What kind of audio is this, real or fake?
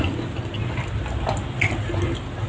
real